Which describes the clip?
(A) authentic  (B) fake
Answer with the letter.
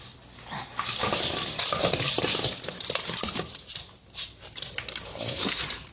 A